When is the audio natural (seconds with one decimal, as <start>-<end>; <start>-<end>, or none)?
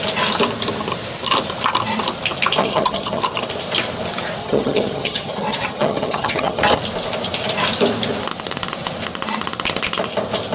0.0-2.6; 3.2-4.4; 6.6-10.5